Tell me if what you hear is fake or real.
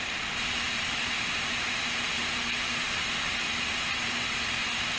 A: real